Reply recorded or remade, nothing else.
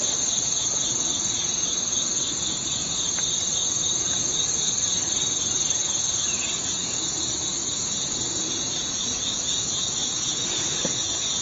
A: remade